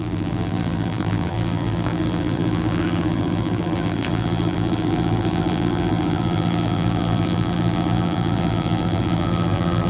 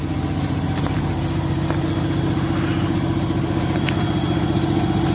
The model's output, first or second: first